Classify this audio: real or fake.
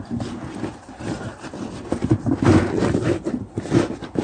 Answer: real